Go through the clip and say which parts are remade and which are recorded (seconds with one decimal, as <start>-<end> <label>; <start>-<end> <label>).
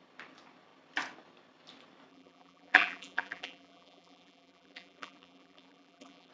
0.0-2.1 recorded; 2.1-6.3 remade